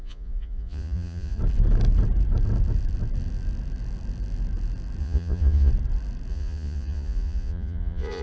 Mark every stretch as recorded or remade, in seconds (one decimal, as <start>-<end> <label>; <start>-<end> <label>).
0.0-1.4 remade; 1.4-5.0 recorded; 5.0-5.7 remade; 5.7-6.3 recorded; 6.3-8.2 remade